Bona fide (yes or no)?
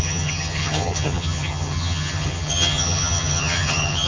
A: no